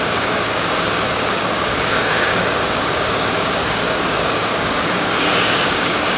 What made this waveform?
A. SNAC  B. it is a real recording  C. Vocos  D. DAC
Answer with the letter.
D